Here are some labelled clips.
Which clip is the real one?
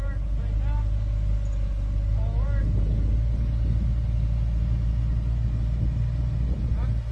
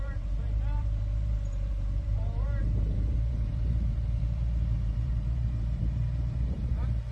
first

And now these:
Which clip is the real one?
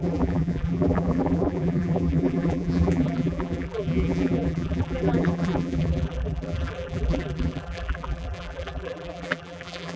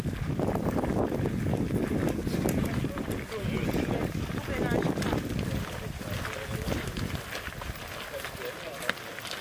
second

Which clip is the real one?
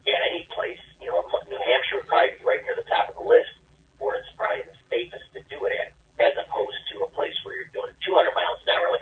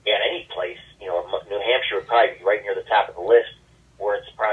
second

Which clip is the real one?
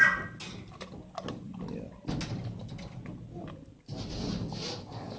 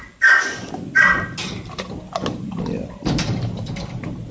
first